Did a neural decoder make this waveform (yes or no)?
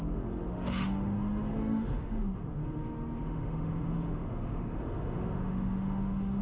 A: yes